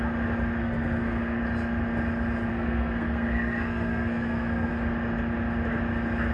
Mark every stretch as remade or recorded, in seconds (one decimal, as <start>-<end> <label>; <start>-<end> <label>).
0.0-0.6 recorded; 0.6-1.4 remade; 1.4-2.5 recorded; 2.5-4.7 remade; 4.7-6.3 recorded